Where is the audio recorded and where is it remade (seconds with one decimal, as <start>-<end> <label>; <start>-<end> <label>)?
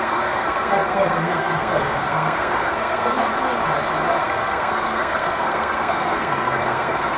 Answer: 0.0-3.3 remade; 3.3-4.2 recorded; 4.2-7.2 remade